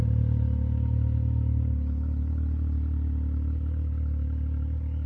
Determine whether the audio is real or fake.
real